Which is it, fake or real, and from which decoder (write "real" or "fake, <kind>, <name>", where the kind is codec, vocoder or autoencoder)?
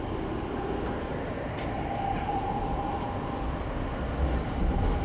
real